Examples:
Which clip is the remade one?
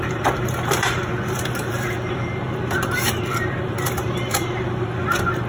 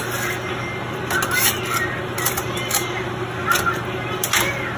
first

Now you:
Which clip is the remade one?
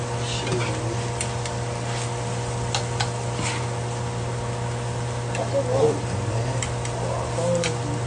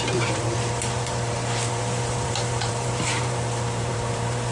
second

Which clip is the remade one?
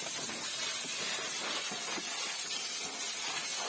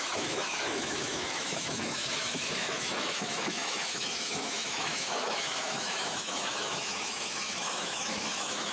second